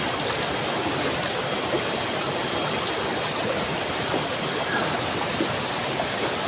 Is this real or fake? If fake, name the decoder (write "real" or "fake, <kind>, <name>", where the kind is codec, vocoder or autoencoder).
real